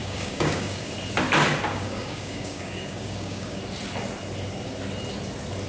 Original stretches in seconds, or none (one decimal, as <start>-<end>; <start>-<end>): 0.9-1.7; 3.6-5.7